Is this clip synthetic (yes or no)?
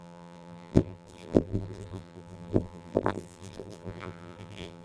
yes